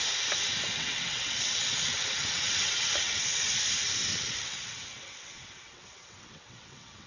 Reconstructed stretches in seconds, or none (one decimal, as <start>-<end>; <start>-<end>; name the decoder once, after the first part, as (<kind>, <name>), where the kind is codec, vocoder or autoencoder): 0.7-3.5 (vocoder, WaveNeXt); 4.1-7.1